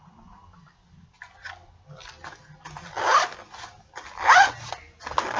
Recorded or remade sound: recorded